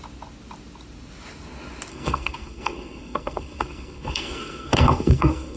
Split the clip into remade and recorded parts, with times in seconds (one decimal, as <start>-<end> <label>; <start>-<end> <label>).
0.0-1.9 recorded; 1.9-5.6 remade